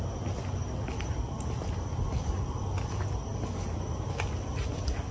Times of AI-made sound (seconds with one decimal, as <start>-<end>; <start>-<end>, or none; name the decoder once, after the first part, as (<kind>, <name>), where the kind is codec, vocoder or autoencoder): none